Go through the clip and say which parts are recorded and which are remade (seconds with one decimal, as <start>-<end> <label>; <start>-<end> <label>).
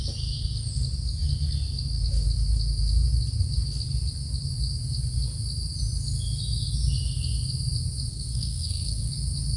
0.0-8.1 recorded; 8.1-9.1 remade; 9.1-9.6 recorded